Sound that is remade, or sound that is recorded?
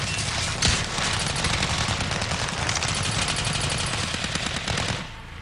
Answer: recorded